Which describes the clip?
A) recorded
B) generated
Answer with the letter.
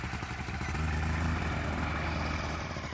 A